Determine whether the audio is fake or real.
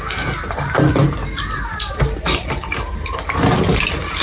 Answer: real